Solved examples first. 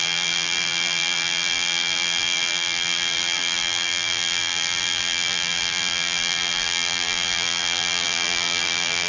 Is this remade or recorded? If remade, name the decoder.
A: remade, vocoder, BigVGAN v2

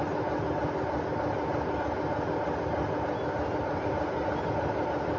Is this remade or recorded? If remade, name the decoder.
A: recorded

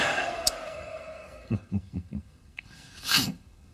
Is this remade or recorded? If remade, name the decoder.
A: remade, codec, SNAC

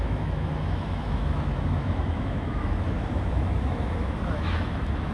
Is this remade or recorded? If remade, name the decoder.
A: remade, autoencoder, DAC-VAE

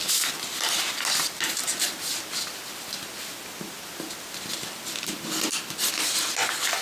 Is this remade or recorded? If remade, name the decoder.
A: recorded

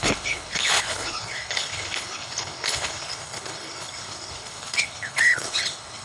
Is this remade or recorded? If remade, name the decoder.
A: remade, codec, HILCodec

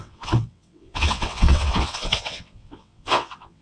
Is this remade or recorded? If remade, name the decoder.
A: remade, vocoder, WaveNeXt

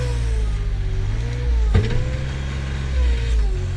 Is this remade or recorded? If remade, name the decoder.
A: recorded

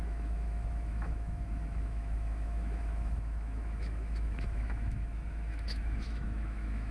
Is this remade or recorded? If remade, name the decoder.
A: remade, autoencoder, DAC-VAE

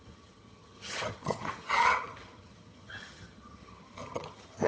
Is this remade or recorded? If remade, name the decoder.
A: remade, vocoder, HiFi-GAN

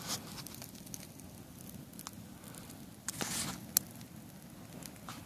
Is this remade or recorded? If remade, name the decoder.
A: recorded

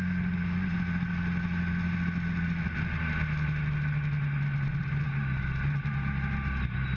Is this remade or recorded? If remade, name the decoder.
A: recorded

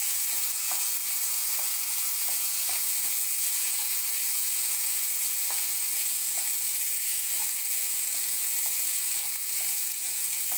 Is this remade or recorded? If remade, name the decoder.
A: remade, vocoder, Vocos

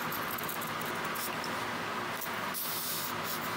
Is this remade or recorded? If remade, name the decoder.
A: recorded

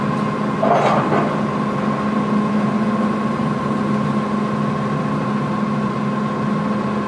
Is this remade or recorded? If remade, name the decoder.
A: recorded